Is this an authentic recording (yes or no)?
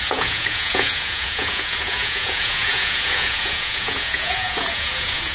no